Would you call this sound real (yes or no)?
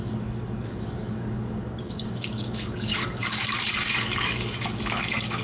no